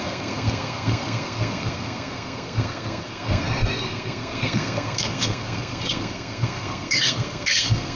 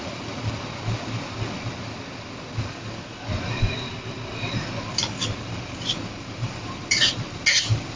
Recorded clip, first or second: second